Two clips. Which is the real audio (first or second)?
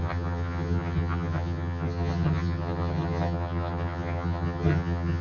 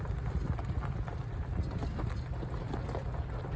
second